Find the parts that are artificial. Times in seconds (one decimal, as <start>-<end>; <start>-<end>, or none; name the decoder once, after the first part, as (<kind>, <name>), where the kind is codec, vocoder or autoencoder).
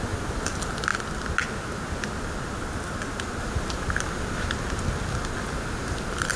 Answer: 0.0-0.9 (vocoder, BigVGAN v2); 3.4-6.4